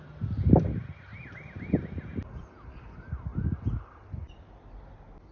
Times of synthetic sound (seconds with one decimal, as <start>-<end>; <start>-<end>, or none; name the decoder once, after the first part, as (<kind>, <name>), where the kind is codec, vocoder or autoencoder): none